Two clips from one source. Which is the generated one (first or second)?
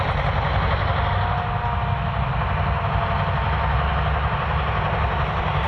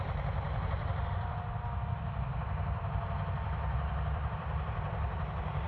second